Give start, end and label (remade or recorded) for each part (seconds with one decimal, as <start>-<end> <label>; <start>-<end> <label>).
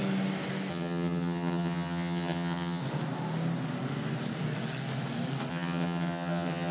0.0-0.7 recorded; 0.7-2.8 remade; 2.8-5.5 recorded; 5.5-6.7 remade